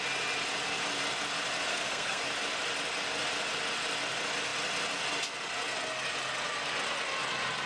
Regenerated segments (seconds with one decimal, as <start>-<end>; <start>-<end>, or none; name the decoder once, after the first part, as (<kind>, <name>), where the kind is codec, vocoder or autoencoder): 1.7-2.2 (codec, SNAC)